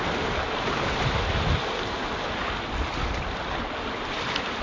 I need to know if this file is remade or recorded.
recorded